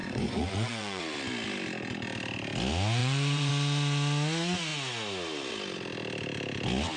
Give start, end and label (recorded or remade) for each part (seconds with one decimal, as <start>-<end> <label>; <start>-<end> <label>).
0.0-1.0 remade; 1.0-3.0 recorded; 3.0-3.5 remade; 3.5-7.0 recorded